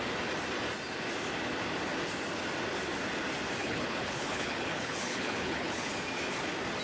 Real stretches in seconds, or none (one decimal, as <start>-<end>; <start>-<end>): 0.0-3.6; 5.9-6.8